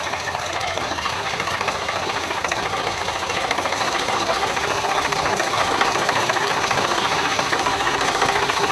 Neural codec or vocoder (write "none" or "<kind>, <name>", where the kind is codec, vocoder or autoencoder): codec, SNAC